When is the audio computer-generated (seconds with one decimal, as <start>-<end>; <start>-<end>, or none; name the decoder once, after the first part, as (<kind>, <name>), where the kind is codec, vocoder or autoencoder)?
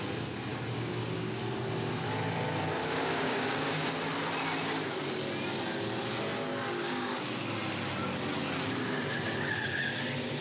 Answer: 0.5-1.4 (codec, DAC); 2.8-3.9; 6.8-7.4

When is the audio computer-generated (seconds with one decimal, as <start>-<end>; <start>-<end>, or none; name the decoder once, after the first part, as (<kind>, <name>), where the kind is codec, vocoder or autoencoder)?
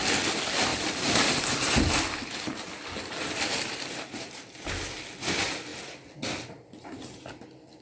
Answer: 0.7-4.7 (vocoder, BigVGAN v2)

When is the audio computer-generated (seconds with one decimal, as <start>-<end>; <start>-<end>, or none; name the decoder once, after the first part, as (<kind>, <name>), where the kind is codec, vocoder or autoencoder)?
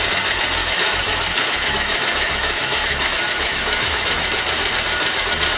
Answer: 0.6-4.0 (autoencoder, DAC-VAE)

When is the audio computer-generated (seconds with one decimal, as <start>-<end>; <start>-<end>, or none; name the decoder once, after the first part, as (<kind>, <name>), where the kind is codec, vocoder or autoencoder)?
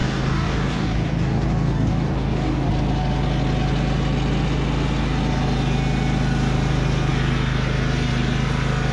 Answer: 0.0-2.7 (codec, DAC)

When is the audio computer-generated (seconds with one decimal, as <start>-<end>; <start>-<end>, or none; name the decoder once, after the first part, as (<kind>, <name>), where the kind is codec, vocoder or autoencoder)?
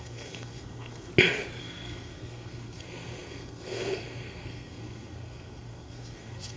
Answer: 0.0-1.1 (codec, SNAC); 1.6-6.6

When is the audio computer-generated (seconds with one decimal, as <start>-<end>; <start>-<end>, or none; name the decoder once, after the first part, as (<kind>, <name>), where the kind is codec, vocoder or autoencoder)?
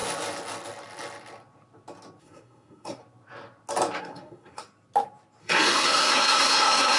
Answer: 2.2-3.0 (codec, SNAC); 4.0-4.6; 5.4-7.0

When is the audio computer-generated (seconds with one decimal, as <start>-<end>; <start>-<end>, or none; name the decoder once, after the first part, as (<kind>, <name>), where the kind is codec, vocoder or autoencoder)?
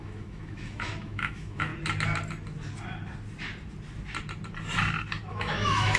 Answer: 0.0-1.7 (autoencoder, DAC-VAE); 5.3-6.0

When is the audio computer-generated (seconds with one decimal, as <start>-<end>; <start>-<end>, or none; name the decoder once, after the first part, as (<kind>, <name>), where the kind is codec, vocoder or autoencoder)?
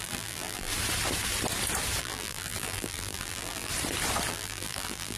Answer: 0.0-0.7 (vocoder, BigVGAN v2); 2.0-3.7; 4.3-5.2